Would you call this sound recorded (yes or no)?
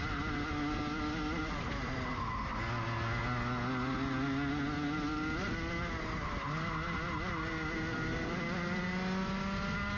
yes